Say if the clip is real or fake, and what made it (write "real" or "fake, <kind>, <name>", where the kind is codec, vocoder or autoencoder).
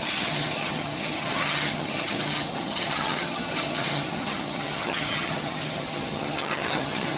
fake, vocoder, HiFi-GAN